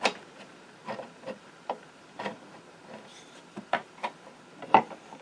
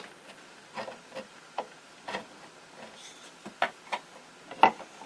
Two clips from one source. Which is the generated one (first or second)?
first